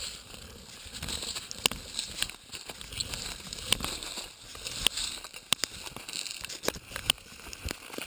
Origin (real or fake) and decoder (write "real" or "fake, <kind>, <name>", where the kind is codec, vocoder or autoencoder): real